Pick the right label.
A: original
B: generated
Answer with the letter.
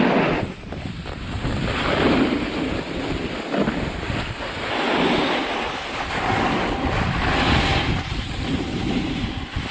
A